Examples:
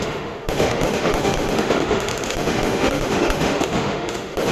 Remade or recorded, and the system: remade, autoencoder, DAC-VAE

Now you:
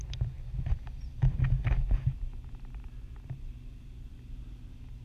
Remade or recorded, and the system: recorded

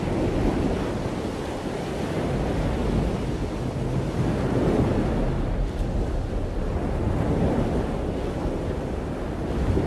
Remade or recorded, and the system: recorded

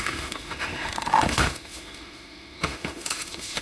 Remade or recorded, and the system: remade, autoencoder, DAC-VAE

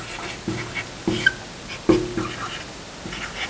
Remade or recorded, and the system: recorded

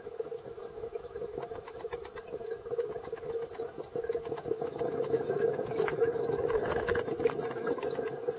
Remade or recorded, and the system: remade, autoencoder, DAC-VAE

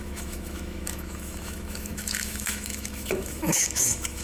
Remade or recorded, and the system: remade, autoencoder, DAC-VAE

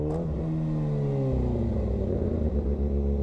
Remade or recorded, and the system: recorded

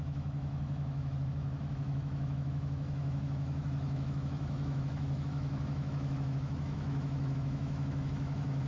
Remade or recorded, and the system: remade, autoencoder, DAC-VAE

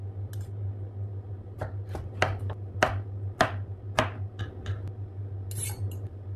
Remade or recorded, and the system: recorded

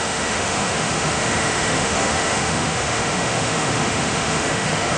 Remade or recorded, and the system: remade, autoencoder, DAC-VAE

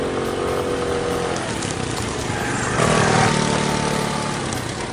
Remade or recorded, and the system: recorded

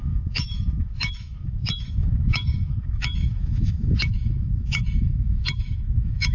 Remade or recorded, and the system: remade, autoencoder, DAC-VAE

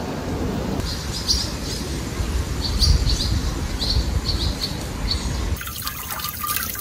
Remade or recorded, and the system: recorded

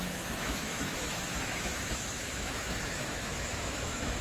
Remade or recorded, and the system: remade, autoencoder, DAC-VAE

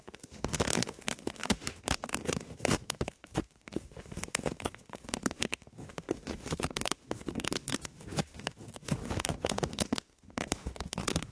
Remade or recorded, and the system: remade, autoencoder, DAC-VAE